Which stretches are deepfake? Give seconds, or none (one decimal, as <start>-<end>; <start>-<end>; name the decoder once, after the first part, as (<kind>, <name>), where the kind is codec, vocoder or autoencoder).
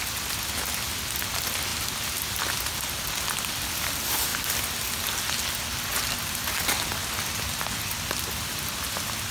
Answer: 1.7-2.4 (vocoder, BigVGAN v2)